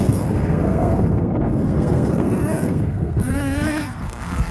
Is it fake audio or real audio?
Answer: fake